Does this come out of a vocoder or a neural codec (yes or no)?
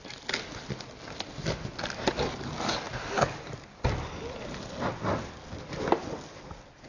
no